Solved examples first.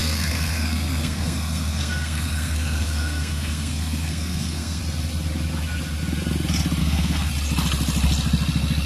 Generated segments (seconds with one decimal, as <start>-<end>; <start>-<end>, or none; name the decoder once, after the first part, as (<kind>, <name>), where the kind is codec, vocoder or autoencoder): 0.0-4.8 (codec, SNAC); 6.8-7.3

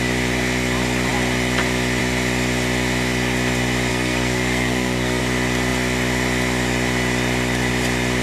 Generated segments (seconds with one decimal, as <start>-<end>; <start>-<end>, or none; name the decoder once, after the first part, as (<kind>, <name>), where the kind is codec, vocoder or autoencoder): 3.9-5.2 (codec, SNAC)

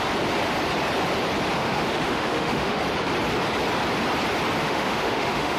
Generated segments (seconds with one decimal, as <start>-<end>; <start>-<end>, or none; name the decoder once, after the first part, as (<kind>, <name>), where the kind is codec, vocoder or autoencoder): 1.6-2.8 (autoencoder, DAC-VAE); 4.6-5.6